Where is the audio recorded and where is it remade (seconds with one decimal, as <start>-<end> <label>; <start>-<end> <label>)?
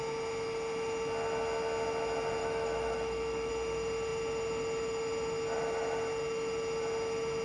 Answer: 0.0-2.4 recorded; 2.4-3.5 remade; 3.5-7.4 recorded